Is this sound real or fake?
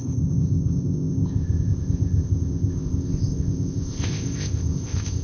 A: fake